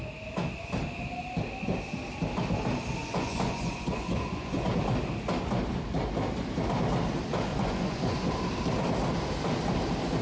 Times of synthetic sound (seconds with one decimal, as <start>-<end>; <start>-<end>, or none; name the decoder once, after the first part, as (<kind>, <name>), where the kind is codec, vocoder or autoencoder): 3.0-4.7 (vocoder, Vocos); 7.5-8.3